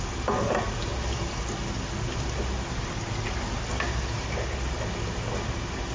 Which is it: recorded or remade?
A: recorded